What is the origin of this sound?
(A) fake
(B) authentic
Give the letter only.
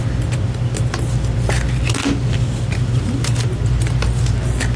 B